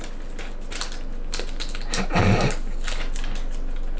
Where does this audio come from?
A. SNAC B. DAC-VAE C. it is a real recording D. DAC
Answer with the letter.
C